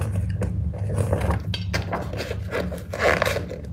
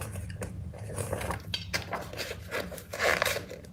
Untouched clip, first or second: first